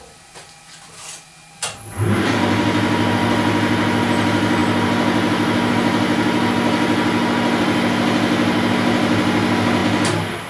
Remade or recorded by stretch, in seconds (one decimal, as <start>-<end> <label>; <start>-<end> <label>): 0.0-10.5 recorded